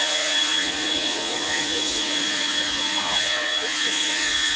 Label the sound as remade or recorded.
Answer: remade